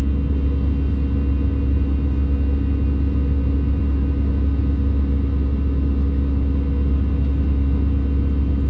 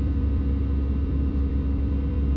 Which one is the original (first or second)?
first